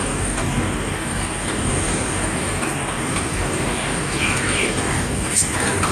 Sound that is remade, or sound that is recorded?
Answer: remade